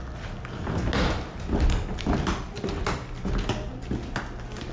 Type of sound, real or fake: real